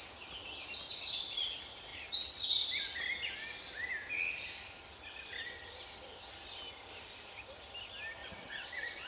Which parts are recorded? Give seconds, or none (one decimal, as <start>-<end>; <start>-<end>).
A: 0.0-8.2

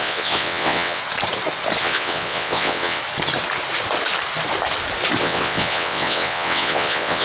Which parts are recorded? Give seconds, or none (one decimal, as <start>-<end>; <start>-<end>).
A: 1.0-1.8; 3.0-5.2

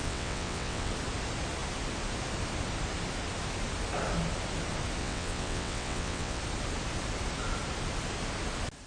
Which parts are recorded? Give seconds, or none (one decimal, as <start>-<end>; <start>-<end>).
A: 0.9-5.0; 6.4-8.9

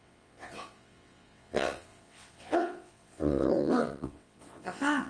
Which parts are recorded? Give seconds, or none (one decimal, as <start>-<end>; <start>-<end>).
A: none

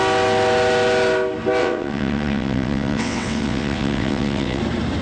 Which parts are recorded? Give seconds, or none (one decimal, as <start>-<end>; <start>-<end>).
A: 0.0-1.6; 4.6-5.0